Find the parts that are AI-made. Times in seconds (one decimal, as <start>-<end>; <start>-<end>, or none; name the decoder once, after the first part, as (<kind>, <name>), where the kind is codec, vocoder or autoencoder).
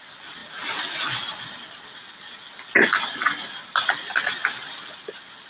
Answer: none